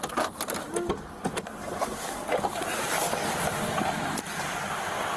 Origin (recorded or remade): recorded